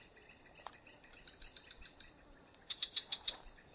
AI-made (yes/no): yes